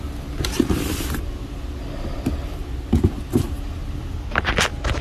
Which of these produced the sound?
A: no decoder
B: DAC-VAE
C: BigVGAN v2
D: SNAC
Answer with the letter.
A